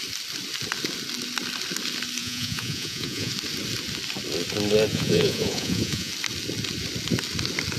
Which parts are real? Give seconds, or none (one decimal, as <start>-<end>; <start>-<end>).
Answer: 0.0-2.2; 3.3-4.9; 6.1-7.8